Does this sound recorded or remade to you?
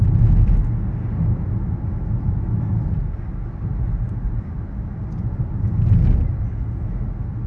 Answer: recorded